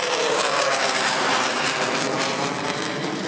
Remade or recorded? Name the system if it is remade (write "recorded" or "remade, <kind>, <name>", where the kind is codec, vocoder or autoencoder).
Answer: remade, vocoder, BigVGAN v2